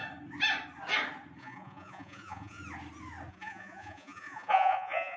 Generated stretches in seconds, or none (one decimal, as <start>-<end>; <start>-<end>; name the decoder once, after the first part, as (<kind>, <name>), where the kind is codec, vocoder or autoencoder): 1.4-2.6 (vocoder, Vocos); 3.3-5.2